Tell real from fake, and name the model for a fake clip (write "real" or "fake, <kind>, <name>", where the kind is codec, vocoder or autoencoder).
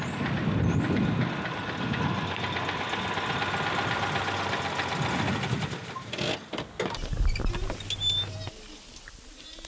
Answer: real